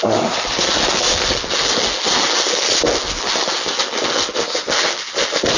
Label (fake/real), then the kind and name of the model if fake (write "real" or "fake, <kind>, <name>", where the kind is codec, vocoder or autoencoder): real